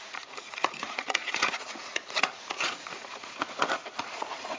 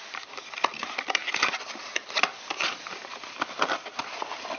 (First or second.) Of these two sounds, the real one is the second